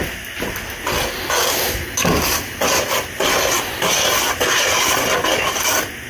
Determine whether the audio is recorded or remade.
recorded